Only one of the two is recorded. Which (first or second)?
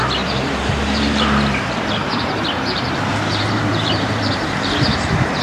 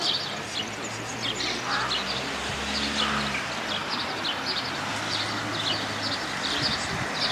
second